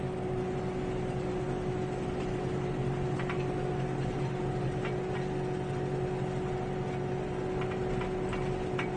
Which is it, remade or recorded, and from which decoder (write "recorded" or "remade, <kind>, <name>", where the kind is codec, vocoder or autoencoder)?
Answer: recorded